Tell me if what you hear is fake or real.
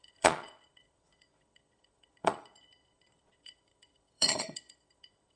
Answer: fake